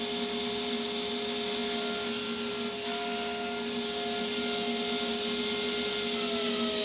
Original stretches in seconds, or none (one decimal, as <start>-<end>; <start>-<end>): 0.0-6.8